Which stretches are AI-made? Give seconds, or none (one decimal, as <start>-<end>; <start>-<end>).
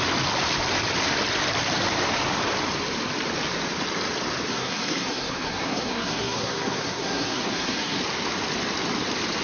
4.5-8.0